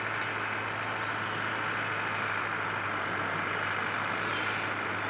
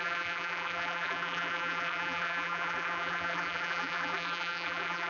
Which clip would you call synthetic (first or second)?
second